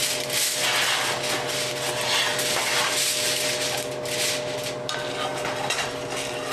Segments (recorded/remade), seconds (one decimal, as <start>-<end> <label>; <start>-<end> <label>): 0.0-6.5 recorded

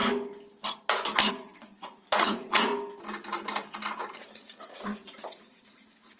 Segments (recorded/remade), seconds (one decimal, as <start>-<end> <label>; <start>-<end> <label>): 0.0-1.3 recorded; 1.3-2.7 remade; 2.7-4.0 recorded; 4.0-6.2 remade

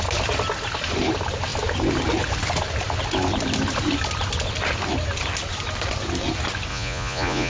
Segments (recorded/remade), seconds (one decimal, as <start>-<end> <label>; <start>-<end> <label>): 0.0-6.7 recorded; 6.7-7.5 remade

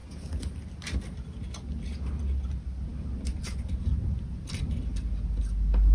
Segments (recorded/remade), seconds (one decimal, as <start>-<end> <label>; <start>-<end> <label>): 0.0-5.9 recorded

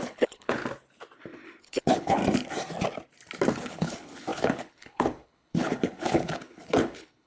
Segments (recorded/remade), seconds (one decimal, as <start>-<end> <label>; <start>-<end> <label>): 0.0-0.6 remade; 0.6-1.6 recorded; 1.6-2.2 remade; 2.2-3.5 recorded; 3.5-7.3 remade

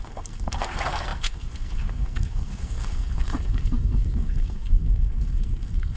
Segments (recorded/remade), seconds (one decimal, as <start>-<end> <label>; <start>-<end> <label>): 0.0-6.0 remade